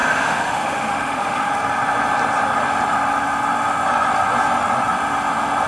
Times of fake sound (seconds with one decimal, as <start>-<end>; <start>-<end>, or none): 0.0-1.5